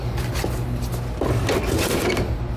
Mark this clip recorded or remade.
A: recorded